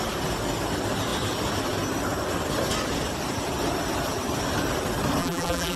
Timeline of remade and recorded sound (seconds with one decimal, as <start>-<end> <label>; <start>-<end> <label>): 0.0-5.2 recorded; 5.2-5.8 remade